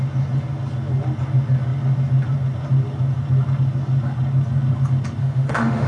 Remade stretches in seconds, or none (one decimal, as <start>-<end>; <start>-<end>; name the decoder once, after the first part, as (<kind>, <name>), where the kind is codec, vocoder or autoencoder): 5.2-5.9 (autoencoder, DAC-VAE)